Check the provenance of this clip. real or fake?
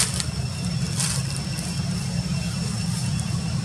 real